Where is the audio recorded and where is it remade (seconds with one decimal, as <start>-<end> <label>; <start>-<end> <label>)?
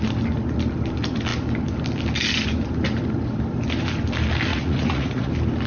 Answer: 0.0-4.5 recorded; 4.5-5.3 remade; 5.3-5.7 recorded